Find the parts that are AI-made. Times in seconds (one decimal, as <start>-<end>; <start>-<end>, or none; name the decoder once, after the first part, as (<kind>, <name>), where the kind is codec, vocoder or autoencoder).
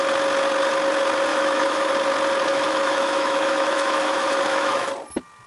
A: 1.3-1.9 (autoencoder, DAC-VAE); 2.5-4.9